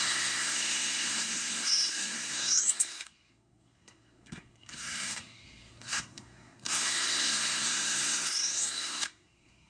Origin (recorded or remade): remade